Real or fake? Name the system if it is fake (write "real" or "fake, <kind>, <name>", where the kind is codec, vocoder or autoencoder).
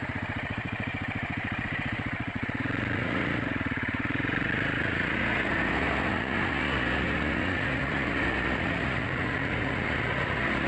fake, vocoder, Vocos